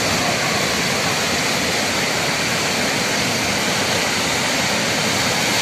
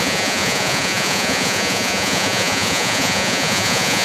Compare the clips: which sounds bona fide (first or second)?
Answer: first